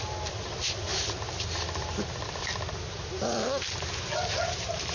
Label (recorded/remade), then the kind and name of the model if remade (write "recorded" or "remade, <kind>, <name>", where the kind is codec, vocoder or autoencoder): recorded